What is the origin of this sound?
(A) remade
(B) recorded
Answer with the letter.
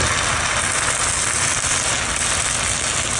B